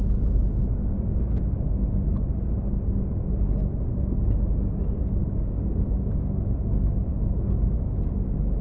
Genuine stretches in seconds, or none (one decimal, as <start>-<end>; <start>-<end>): 0.0-5.2; 6.2-7.1; 8.1-8.6